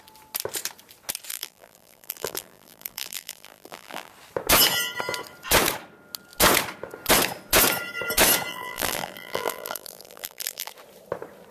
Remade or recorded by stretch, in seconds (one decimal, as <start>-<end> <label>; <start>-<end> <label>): 0.0-1.3 recorded; 1.3-4.1 remade; 4.1-8.5 recorded; 8.5-10.7 remade; 10.7-11.5 recorded